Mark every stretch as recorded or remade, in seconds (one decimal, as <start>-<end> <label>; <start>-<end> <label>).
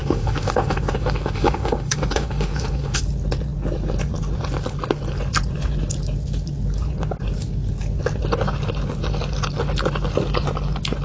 0.0-3.0 remade; 3.0-11.0 recorded